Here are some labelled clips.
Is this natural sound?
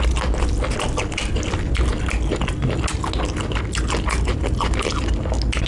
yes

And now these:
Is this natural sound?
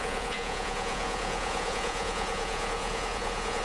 no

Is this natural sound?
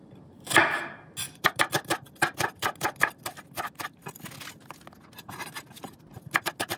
yes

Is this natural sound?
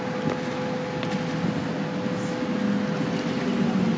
yes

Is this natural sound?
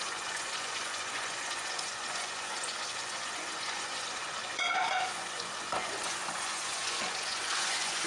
no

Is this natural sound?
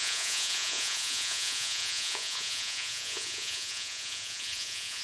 no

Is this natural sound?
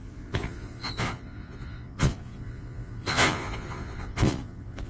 no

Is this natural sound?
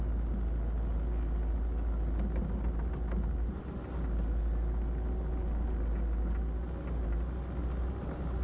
yes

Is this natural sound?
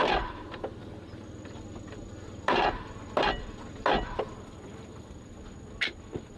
yes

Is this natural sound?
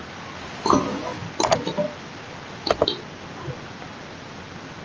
yes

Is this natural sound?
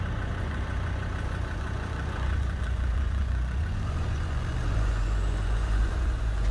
no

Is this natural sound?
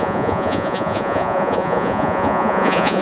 no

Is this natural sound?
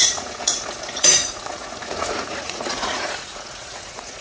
no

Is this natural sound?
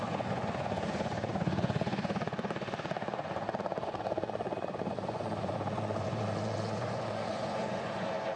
no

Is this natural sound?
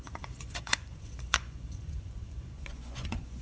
no